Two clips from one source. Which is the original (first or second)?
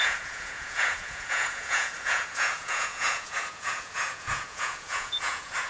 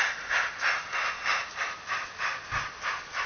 second